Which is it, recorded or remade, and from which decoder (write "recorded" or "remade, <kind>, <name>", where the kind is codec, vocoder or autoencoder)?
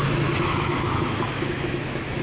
remade, autoencoder, DAC-VAE